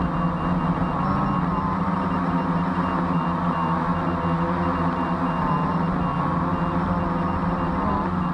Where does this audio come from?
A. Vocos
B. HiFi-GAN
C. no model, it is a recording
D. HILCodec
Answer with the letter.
C